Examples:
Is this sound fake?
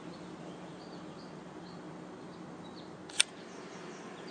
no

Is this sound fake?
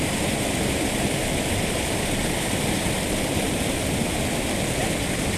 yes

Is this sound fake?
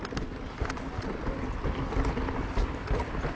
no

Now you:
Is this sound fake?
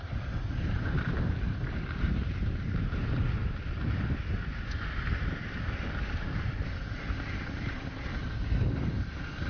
yes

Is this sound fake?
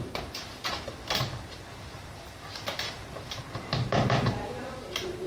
yes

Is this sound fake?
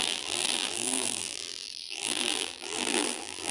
yes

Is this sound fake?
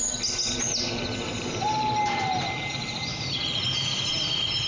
no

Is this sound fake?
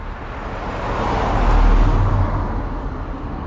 no